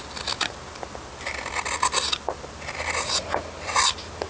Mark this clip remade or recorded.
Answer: recorded